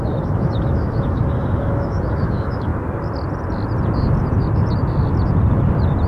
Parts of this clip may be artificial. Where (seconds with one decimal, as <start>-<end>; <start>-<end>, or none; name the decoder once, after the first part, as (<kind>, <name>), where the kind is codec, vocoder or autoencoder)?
0.0-2.7 (autoencoder, DAC-VAE)